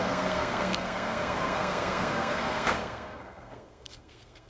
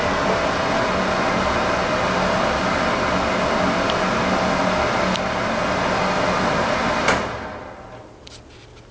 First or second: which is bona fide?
second